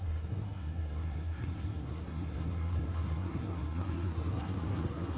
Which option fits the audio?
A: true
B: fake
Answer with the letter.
B